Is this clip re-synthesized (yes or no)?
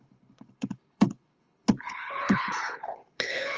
yes